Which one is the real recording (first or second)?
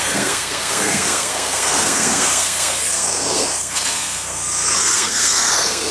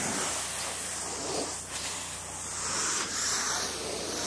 second